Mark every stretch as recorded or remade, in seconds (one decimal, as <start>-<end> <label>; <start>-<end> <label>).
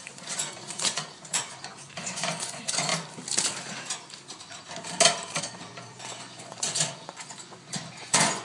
0.0-2.9 remade; 2.9-5.4 recorded; 5.4-8.4 remade